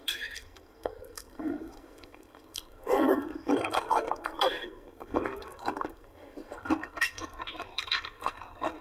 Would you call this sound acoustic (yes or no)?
no